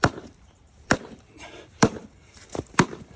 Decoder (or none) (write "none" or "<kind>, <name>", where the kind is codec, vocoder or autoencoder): vocoder, BigVGAN v2